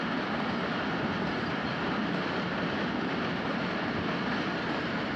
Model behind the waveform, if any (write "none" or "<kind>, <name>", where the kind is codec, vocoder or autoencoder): none